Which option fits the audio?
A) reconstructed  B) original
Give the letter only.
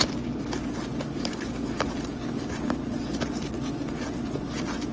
B